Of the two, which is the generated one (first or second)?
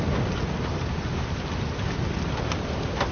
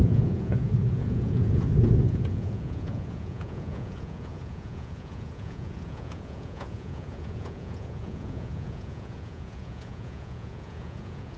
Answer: second